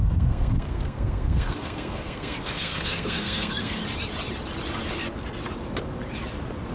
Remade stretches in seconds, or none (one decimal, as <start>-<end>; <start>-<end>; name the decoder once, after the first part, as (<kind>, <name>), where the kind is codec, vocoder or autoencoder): 0.0-3.8 (codec, SNAC)